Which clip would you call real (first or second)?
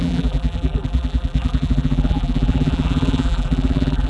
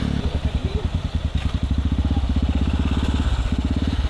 second